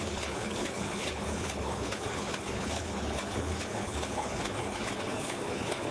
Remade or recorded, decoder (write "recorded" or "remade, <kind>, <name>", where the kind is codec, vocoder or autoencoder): remade, codec, HILCodec